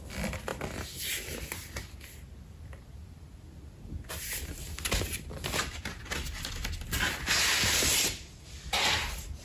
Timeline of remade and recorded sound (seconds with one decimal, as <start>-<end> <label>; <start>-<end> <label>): 0.0-9.4 recorded